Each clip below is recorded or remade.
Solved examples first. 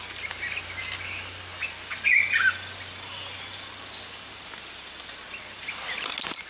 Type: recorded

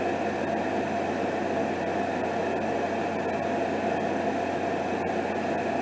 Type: recorded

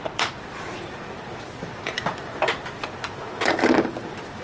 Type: remade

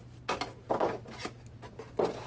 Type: recorded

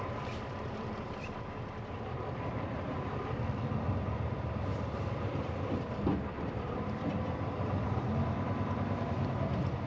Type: remade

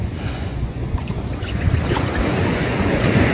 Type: remade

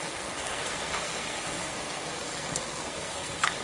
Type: remade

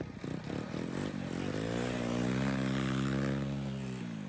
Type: recorded